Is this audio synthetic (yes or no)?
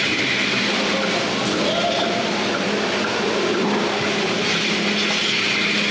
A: no